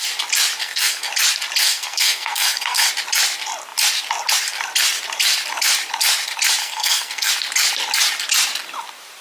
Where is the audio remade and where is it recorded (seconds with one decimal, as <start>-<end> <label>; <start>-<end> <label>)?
0.0-0.6 recorded; 0.6-1.1 remade; 1.1-1.6 recorded; 1.6-2.9 remade; 2.9-6.6 recorded; 6.6-7.3 remade; 7.3-9.2 recorded